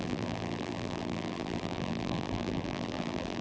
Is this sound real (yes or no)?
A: no